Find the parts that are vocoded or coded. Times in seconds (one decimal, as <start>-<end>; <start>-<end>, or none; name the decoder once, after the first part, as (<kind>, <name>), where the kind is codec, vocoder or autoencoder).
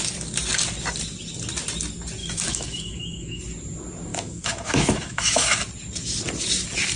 2.2-3.4 (autoencoder, DAC-VAE); 4.1-5.7